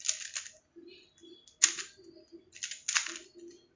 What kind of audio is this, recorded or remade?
recorded